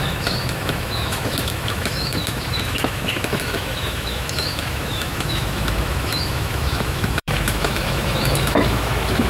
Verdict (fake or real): fake